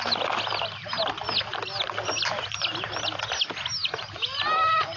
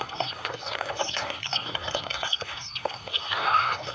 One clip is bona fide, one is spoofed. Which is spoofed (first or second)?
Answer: second